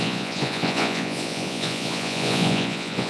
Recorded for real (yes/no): no